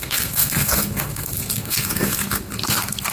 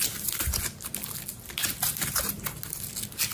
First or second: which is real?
second